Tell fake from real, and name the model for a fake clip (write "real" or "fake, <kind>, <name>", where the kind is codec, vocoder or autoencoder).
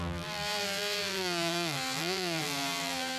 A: fake, vocoder, BigVGAN v2